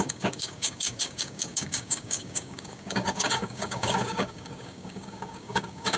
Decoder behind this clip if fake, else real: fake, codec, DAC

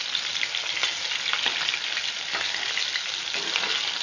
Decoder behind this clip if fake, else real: real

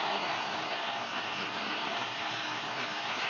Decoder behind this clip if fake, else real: fake, codec, SNAC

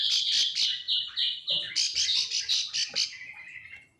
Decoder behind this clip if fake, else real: real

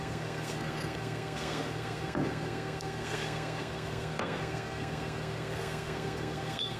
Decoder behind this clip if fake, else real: fake, codec, SNAC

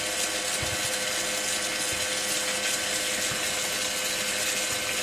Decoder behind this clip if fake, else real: real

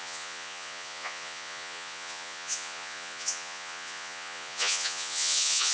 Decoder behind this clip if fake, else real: fake, vocoder, Vocos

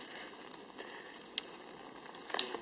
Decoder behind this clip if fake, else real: real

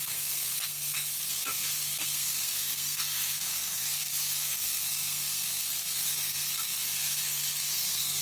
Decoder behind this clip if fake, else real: fake, codec, SNAC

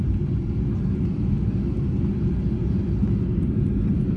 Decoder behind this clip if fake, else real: real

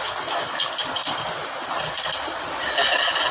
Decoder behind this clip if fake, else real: real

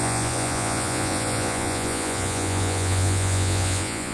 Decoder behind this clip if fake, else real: fake, vocoder, Vocos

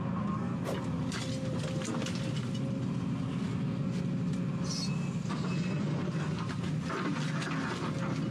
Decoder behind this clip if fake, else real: real